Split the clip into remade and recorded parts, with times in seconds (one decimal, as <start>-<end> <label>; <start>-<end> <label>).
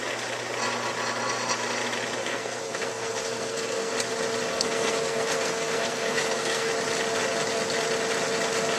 0.0-2.2 recorded; 2.2-3.9 remade; 3.9-4.5 recorded; 4.5-6.7 remade; 6.7-8.8 recorded